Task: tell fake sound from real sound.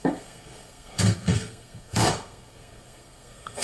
fake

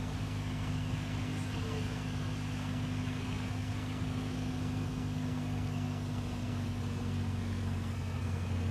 fake